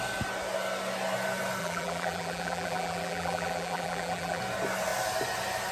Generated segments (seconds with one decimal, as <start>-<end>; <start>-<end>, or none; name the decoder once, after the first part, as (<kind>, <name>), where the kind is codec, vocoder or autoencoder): 1.6-4.4 (vocoder, BigVGAN v2)